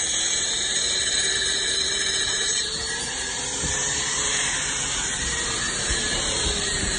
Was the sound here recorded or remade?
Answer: remade